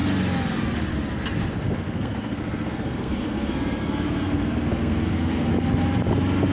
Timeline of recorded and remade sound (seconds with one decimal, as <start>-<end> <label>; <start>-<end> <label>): 0.0-1.6 recorded; 1.6-5.5 remade; 5.5-6.5 recorded